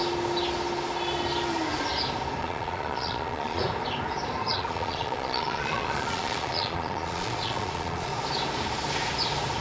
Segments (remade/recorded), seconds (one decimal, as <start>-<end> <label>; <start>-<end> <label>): 0.0-2.4 recorded; 2.4-3.6 remade; 3.6-4.5 recorded; 4.5-8.1 remade; 8.1-9.6 recorded